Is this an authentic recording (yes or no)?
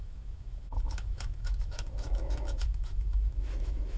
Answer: no